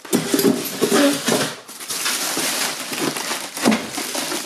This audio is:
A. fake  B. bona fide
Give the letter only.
B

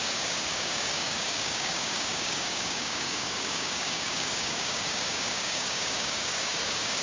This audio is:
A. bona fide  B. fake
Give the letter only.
B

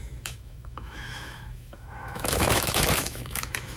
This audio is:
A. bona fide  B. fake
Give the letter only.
B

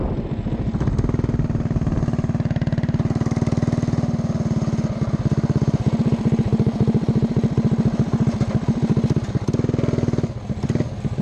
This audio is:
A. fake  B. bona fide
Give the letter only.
B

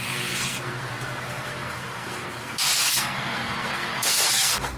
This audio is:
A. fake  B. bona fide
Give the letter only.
A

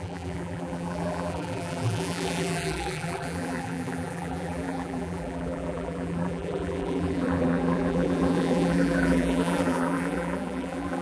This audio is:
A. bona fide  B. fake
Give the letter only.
B